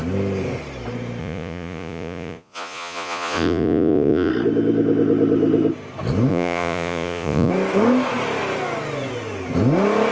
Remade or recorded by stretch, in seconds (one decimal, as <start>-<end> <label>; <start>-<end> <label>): 0.0-1.2 recorded; 1.2-4.3 remade; 4.3-6.3 recorded; 6.3-7.5 remade; 7.5-10.1 recorded